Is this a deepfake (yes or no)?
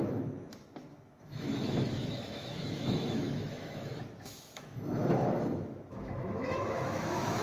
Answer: yes